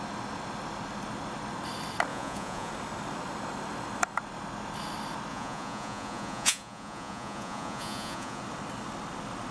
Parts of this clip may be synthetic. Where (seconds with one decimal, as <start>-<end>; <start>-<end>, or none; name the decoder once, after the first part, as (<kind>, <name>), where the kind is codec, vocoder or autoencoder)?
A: 2.1-2.7 (vocoder, Vocos); 5.3-8.4